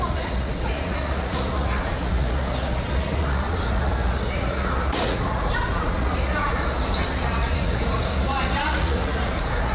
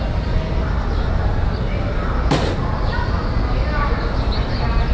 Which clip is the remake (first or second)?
first